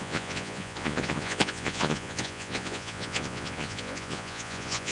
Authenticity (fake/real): fake